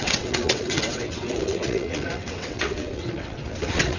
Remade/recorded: remade